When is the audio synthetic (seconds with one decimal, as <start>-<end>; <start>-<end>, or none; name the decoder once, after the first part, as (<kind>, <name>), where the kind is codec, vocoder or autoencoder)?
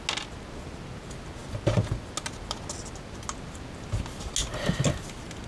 none